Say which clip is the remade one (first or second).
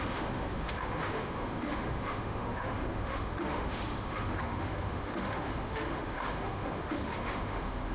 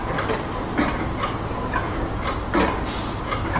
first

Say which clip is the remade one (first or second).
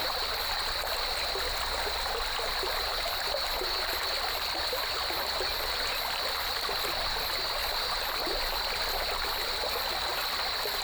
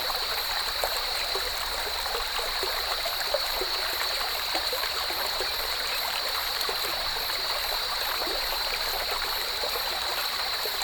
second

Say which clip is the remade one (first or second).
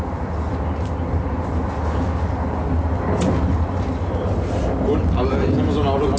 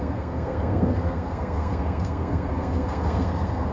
second